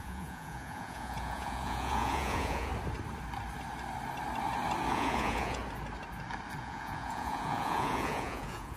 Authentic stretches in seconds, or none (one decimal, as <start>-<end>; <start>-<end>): 2.7-4.9; 5.6-6.6